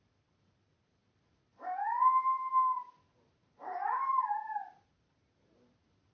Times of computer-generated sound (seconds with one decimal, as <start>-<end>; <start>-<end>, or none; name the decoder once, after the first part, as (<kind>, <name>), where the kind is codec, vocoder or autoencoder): 0.0-1.5 (vocoder, BigVGAN v2); 3.3-6.1